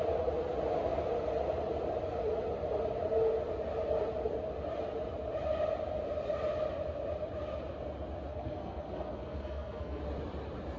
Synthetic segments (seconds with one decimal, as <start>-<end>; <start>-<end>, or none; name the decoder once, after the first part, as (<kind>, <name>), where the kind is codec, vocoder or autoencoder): 8.3-10.0 (codec, SNAC)